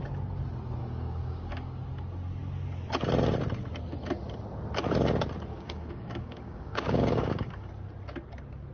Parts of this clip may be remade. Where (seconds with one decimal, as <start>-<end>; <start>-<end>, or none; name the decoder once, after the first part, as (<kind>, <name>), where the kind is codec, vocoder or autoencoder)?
0.8-1.8 (codec, DAC); 5.5-7.7